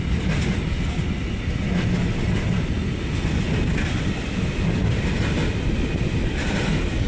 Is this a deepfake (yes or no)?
no